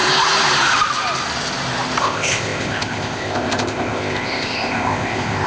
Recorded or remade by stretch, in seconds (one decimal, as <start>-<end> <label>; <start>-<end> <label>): 0.0-2.0 recorded; 2.0-5.5 remade